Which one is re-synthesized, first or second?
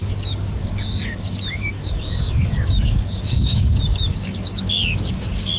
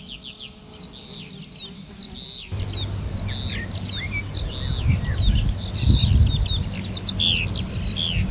first